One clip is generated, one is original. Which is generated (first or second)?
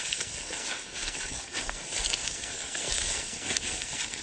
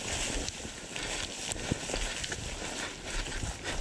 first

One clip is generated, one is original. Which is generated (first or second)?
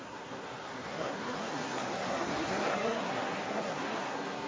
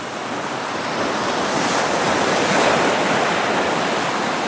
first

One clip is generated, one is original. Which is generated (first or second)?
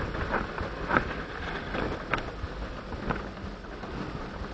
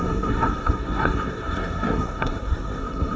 second